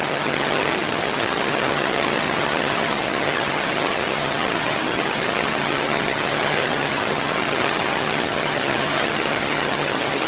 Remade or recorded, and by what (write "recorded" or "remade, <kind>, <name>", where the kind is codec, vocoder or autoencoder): remade, vocoder, HiFi-GAN